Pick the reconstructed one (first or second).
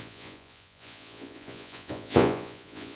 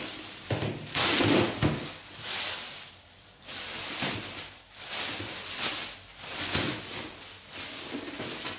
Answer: first